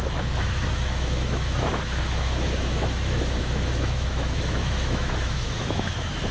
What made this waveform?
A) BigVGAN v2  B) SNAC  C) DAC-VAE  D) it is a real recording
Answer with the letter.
C